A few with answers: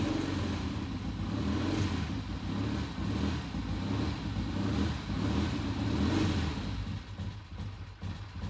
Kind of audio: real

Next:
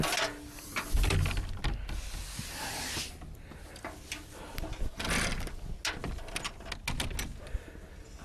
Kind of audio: real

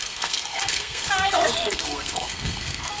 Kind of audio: fake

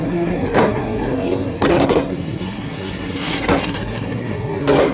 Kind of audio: fake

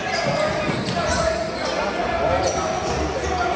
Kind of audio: real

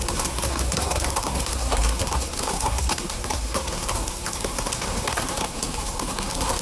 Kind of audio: fake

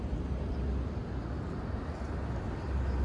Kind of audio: real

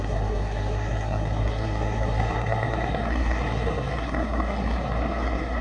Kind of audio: fake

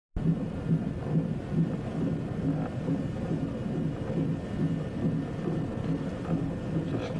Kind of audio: real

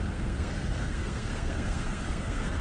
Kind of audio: fake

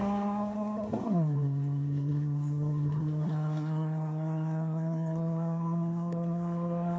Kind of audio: fake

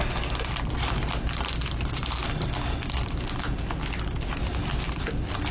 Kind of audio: real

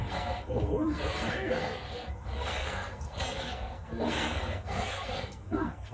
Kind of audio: fake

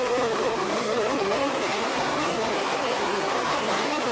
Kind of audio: fake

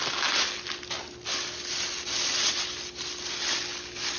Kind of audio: real